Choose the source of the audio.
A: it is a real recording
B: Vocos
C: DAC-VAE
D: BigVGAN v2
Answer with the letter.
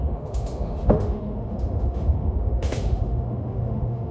C